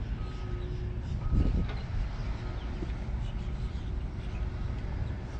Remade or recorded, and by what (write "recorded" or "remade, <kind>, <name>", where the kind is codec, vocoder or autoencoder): recorded